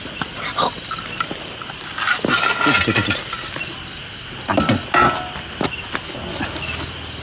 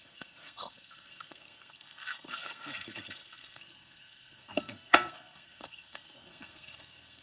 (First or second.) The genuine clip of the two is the first